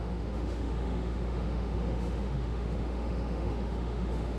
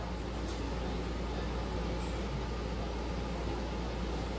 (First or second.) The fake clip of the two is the first